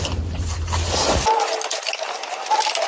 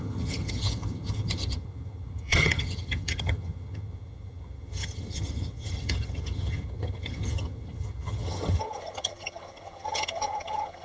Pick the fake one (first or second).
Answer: second